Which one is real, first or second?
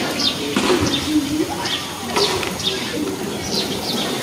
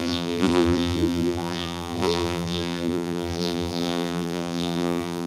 first